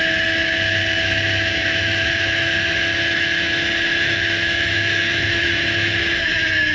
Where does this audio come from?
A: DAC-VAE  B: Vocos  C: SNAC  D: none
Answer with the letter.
A